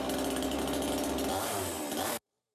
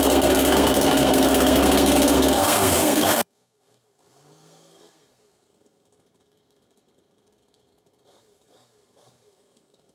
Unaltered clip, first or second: first